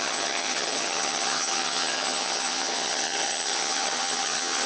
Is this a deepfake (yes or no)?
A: yes